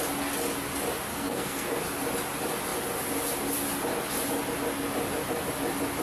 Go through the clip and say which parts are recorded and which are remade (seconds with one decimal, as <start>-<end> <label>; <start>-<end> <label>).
0.0-1.1 recorded; 1.1-1.7 remade; 1.7-6.0 recorded